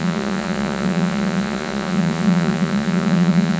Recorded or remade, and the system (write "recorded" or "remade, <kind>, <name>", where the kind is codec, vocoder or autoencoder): remade, vocoder, Vocos